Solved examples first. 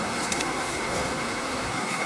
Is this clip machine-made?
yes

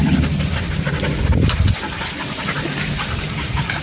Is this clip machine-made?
no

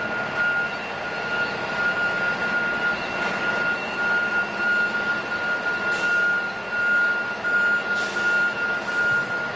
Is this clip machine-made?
no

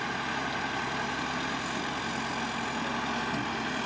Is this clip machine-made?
no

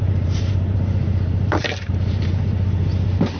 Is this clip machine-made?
yes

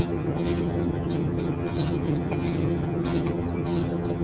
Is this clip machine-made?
yes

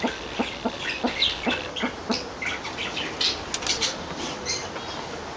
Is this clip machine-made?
no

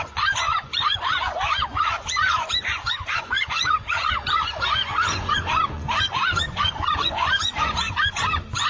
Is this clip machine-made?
yes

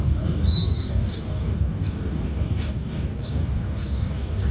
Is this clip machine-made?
yes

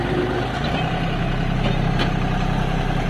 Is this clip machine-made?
no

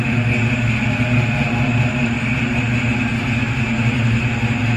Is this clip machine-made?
no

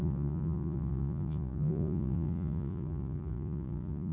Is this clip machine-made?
yes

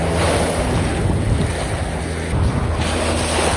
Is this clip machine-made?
no